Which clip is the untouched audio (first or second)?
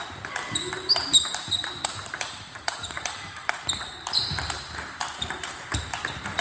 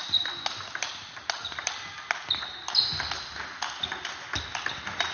second